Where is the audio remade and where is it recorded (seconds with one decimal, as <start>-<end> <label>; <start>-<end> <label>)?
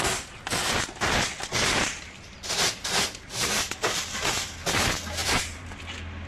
0.0-5.2 recorded; 5.2-5.8 remade; 5.8-6.3 recorded